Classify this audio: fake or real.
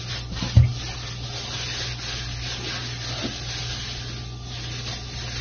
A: real